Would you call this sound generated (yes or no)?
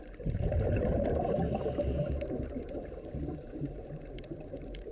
yes